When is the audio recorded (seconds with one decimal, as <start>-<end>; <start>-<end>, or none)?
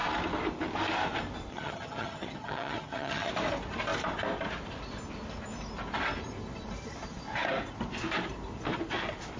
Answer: 0.0-1.5; 3.3-9.4